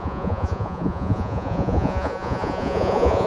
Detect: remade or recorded remade